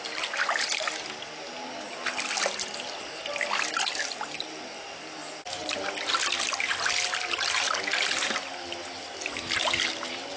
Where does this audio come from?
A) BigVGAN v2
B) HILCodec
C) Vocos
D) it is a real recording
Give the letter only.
D